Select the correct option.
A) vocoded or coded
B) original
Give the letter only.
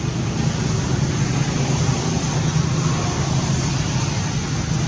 B